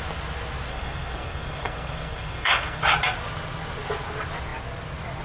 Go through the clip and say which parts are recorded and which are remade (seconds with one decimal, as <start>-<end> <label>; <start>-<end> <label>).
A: 0.0-0.7 recorded; 0.7-2.8 remade; 2.8-5.2 recorded